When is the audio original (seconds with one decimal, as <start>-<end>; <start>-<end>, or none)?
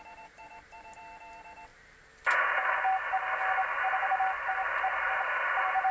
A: 1.7-5.2